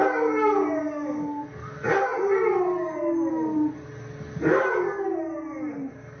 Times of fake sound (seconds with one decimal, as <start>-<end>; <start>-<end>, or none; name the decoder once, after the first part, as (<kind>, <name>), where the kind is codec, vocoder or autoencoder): none